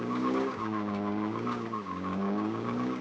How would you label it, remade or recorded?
remade